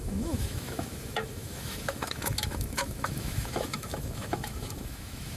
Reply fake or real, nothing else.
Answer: fake